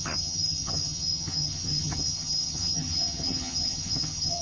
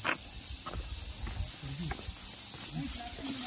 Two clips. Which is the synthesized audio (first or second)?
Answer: first